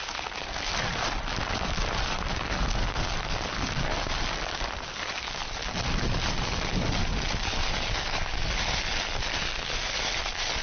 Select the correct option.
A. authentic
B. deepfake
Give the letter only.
A